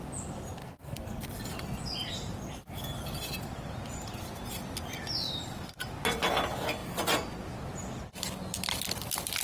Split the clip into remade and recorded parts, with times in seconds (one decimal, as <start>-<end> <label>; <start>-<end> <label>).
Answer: 0.0-0.6 recorded; 0.6-1.3 remade; 1.3-9.4 recorded